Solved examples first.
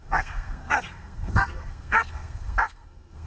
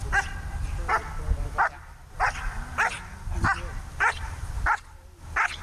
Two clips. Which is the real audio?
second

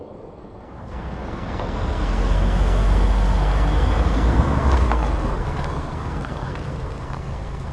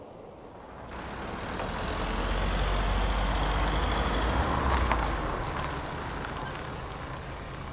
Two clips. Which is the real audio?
second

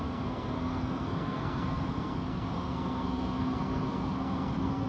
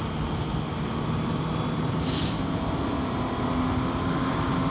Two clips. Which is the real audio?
second